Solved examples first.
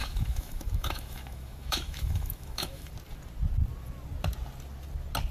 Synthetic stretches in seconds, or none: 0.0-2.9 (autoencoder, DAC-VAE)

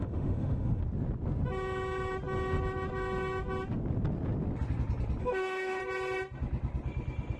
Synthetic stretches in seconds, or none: 0.0-0.8 (autoencoder, DAC-VAE); 5.2-5.8

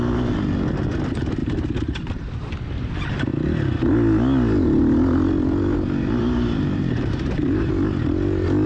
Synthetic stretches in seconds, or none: 1.4-2.5 (vocoder, BigVGAN v2); 6.2-7.7

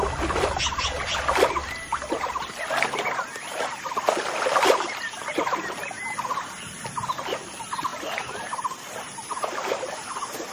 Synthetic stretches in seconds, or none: 7.9-10.5 (vocoder, BigVGAN v2)

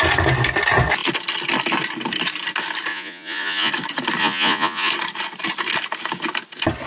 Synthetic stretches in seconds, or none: 2.9-3.7 (vocoder, Vocos); 4.2-4.9

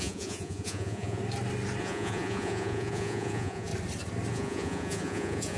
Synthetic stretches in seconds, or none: 0.0-1.2 (vocoder, Vocos); 1.8-3.7; 4.3-5.6

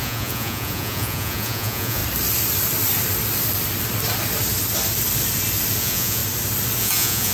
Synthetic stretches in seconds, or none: 0.0-2.0 (vocoder, Vocos); 5.8-6.2; 6.8-7.3